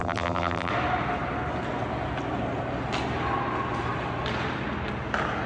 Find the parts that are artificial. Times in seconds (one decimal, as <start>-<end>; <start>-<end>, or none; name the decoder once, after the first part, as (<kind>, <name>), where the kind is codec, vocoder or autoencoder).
0.0-0.7 (vocoder, BigVGAN v2)